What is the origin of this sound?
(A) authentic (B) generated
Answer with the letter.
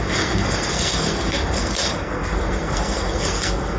B